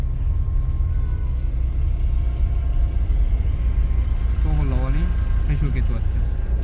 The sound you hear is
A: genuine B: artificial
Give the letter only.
A